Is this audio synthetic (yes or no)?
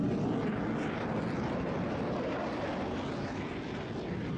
no